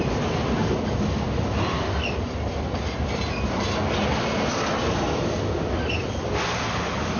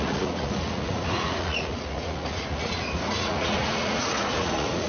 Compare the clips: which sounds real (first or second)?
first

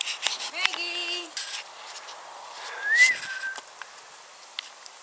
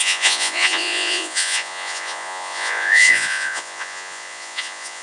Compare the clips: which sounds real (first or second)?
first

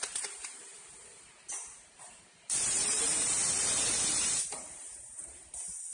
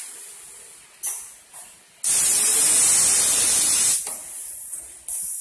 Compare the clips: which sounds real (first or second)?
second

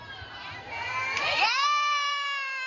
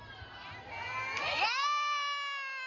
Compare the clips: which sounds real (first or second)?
second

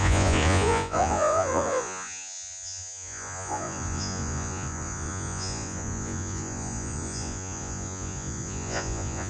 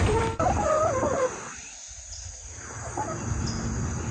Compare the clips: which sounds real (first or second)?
second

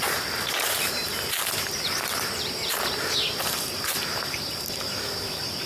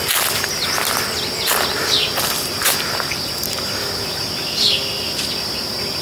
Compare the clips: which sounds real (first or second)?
second